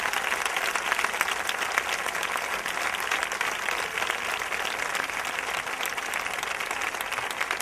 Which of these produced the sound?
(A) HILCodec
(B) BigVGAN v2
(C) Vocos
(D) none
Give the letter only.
D